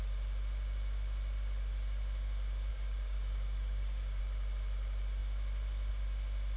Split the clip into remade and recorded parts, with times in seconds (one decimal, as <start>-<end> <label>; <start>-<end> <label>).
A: 0.0-2.7 recorded; 2.7-4.2 remade; 4.2-6.6 recorded